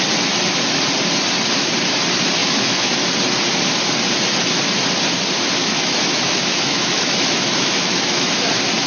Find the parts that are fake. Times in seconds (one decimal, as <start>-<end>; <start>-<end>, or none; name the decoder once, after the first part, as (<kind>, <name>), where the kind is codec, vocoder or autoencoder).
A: 2.4-2.9 (autoencoder, DAC-VAE); 5.6-8.3